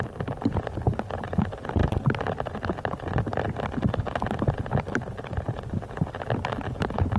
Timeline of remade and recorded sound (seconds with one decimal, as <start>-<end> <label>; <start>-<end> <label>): 0.0-7.2 recorded